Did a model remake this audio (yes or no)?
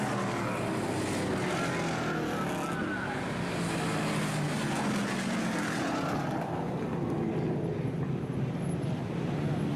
no